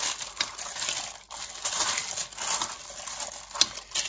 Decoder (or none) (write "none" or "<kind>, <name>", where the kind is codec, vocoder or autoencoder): none